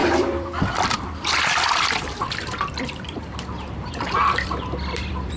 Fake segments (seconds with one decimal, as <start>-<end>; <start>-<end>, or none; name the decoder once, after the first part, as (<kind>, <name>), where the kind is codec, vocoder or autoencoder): 0.0-5.4 (vocoder, BigVGAN v2)